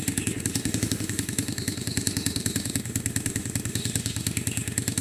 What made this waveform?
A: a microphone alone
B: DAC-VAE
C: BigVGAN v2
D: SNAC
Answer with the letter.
B